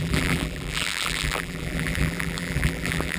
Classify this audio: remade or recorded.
remade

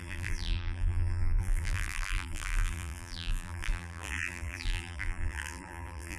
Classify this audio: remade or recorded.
remade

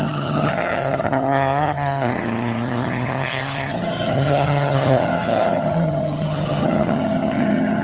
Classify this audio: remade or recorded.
remade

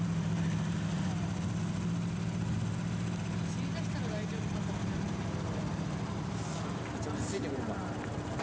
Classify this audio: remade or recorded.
recorded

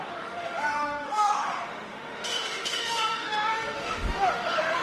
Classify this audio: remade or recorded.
remade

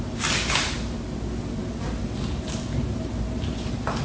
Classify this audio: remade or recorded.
recorded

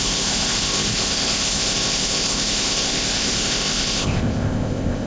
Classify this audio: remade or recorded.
remade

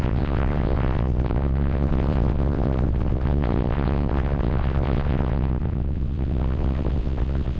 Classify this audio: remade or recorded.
remade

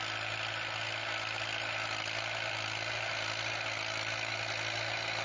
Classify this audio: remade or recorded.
recorded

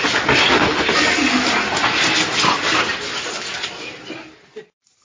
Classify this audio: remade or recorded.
recorded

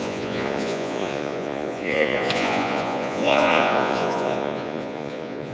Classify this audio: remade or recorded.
remade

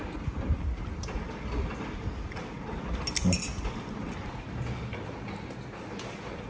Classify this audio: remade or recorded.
recorded